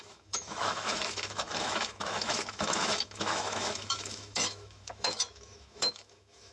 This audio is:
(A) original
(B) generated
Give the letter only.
B